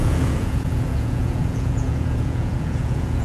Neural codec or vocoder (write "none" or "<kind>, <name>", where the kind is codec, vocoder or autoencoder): vocoder, Vocos